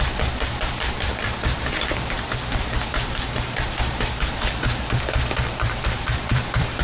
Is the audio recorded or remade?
remade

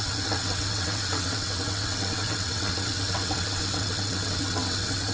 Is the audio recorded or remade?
remade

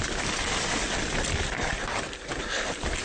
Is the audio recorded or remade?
recorded